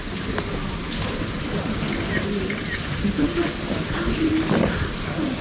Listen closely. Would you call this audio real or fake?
real